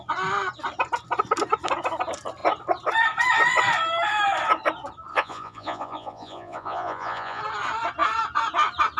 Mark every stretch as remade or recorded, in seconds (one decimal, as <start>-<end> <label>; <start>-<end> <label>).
0.0-5.1 recorded; 5.1-7.4 remade; 7.4-9.0 recorded